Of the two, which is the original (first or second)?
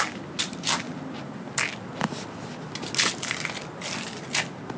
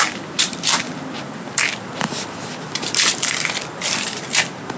first